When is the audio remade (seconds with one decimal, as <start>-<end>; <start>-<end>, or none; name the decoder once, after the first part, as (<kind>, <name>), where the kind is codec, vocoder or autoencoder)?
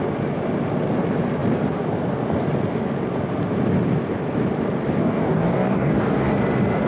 5.0-6.3 (codec, DAC)